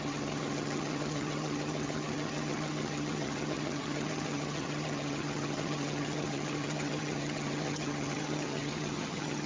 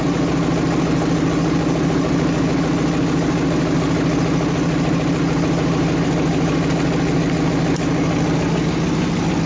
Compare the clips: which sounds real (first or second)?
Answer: second